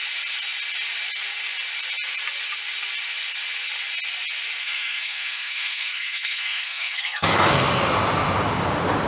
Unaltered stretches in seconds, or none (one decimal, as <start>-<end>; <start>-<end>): 0.0-4.6; 7.6-9.1